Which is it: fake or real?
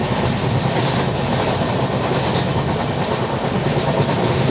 real